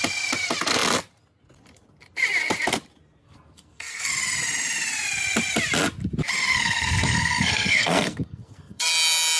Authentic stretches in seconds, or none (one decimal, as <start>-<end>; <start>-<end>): 0.0-3.2; 4.1-6.5; 8.9-9.4